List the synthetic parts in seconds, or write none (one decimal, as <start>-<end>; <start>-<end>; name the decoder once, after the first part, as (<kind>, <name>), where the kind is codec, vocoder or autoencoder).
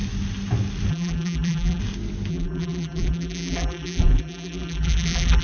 0.9-1.8 (vocoder, BigVGAN v2); 2.3-5.4